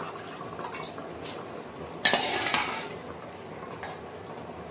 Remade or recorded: recorded